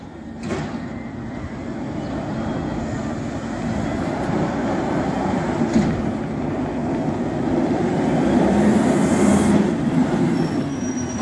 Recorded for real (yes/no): no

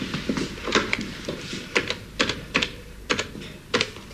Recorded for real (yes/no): no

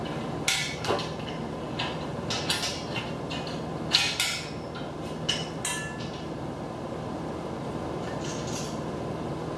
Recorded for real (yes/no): yes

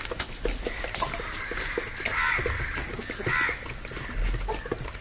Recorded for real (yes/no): yes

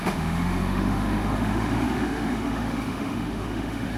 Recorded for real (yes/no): no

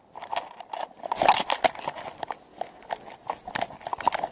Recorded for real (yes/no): yes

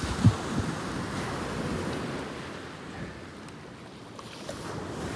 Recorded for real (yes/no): yes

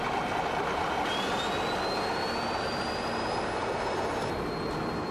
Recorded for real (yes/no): yes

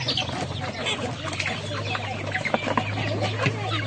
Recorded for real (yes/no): yes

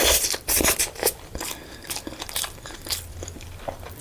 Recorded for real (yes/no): no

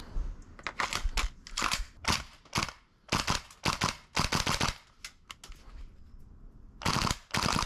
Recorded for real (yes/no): yes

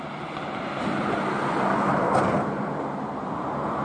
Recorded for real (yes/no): yes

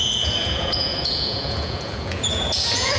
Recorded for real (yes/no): no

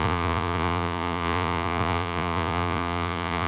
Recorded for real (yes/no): no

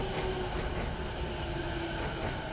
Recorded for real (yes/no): yes